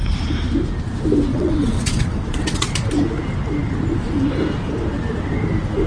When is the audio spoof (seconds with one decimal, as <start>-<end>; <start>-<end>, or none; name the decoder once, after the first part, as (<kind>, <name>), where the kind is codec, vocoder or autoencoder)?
1.3-2.7 (vocoder, WaveNeXt)